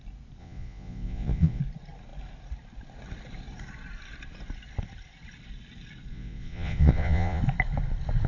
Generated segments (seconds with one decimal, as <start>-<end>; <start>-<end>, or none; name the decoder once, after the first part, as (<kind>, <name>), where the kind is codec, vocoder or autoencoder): 0.4-1.6 (vocoder, Vocos); 6.1-7.4